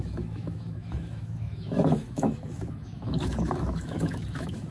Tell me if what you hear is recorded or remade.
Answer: remade